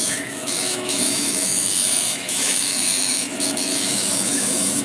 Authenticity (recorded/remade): remade